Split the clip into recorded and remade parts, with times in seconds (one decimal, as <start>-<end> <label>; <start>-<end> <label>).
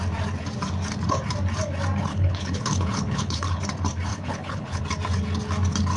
0.0-2.1 recorded; 2.1-3.6 remade; 3.6-4.1 recorded; 4.1-4.8 remade; 4.8-6.0 recorded